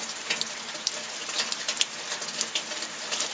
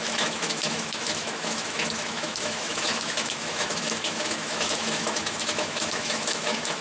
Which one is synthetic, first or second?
second